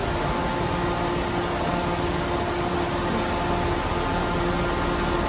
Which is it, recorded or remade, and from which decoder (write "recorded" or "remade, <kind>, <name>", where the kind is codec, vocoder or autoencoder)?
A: recorded